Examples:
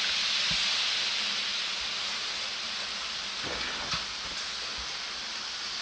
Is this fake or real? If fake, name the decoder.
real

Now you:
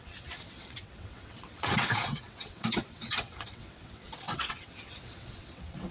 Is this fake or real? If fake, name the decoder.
fake, vocoder, WaveNeXt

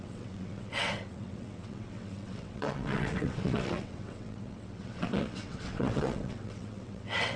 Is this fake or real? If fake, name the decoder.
fake, vocoder, WaveNeXt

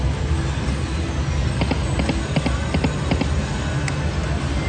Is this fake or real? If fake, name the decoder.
real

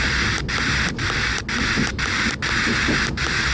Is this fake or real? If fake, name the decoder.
real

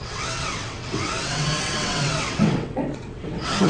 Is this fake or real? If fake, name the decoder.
fake, vocoder, WaveNeXt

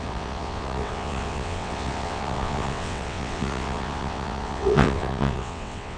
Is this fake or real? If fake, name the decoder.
fake, vocoder, WaveNeXt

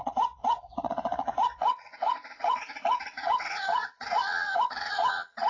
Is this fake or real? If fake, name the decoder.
fake, vocoder, WaveNeXt